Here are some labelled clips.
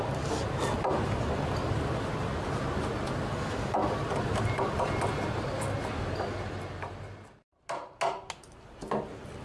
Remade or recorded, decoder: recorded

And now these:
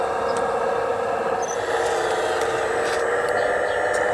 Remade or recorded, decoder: recorded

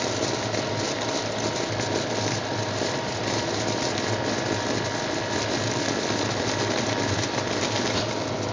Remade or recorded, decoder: recorded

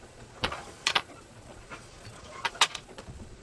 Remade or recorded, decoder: remade, vocoder, Vocos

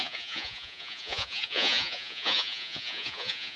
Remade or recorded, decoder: remade, vocoder, Vocos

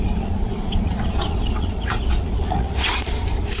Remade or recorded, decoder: remade, vocoder, Vocos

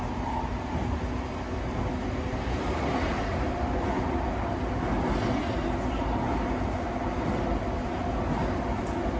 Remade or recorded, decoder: recorded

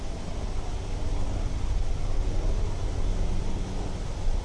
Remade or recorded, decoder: recorded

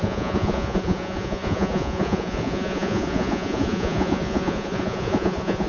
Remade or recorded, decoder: remade, vocoder, Vocos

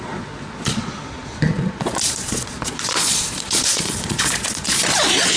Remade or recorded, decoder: remade, vocoder, Vocos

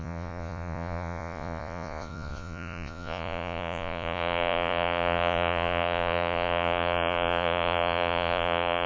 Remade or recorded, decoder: remade, vocoder, Vocos